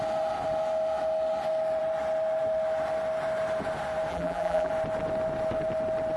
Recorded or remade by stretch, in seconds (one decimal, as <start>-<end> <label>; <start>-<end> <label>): 0.0-4.1 recorded; 4.1-4.7 remade; 4.7-6.2 recorded